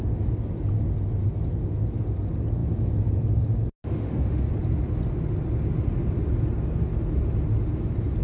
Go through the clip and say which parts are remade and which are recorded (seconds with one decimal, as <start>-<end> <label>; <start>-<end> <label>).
0.0-3.9 recorded; 3.9-4.4 remade; 4.4-8.2 recorded